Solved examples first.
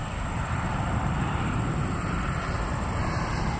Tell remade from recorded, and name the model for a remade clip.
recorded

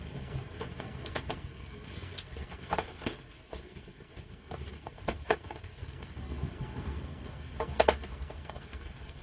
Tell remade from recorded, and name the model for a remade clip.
remade, codec, SNAC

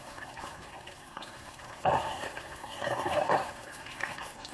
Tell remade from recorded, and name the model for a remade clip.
remade, codec, SNAC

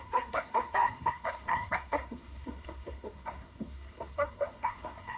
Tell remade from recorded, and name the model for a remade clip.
remade, codec, SNAC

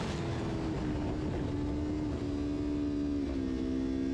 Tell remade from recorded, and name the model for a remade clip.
recorded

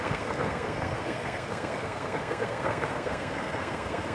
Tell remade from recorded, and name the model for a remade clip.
remade, codec, SNAC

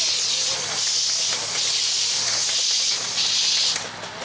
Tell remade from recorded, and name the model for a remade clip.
recorded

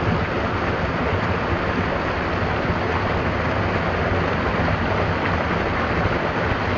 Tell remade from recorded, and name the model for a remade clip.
recorded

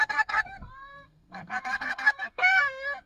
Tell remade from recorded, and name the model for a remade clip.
remade, codec, SNAC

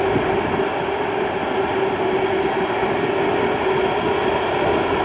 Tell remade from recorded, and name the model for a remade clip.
recorded